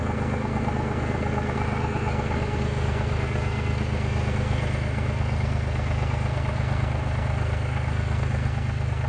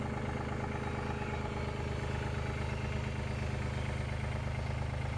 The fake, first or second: first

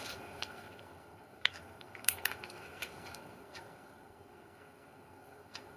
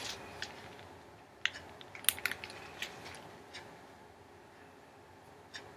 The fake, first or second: first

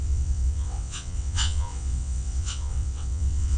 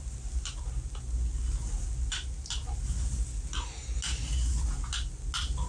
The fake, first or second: first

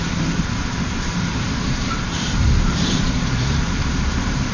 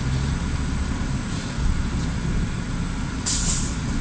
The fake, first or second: first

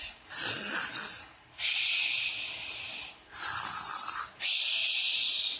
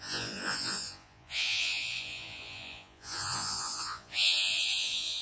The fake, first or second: second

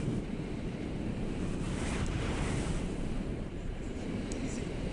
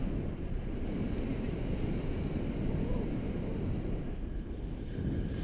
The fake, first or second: first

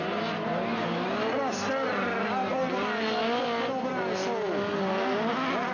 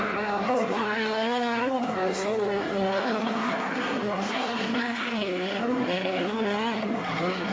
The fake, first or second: second